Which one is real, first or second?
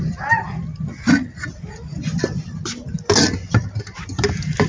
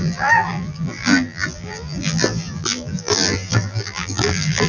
first